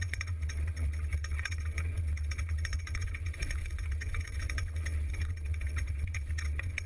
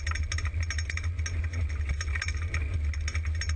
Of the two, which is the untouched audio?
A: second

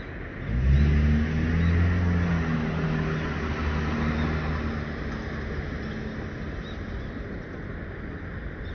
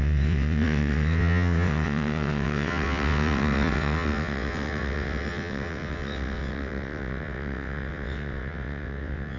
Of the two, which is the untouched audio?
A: first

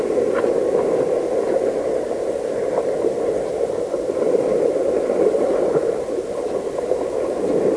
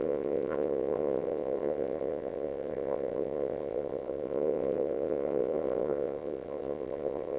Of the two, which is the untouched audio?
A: first